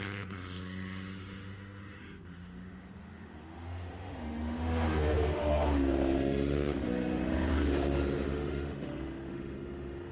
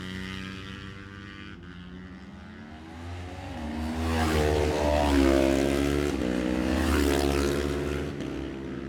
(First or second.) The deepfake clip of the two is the first